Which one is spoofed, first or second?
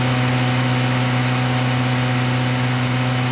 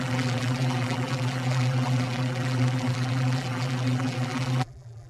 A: second